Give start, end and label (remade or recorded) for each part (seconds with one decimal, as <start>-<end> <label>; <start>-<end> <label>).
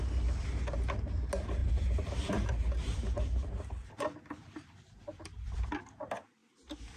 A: 0.0-1.6 recorded; 1.6-5.8 remade; 5.8-7.0 recorded